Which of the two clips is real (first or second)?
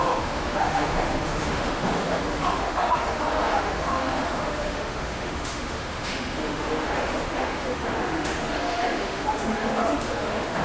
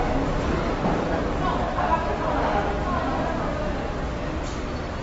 second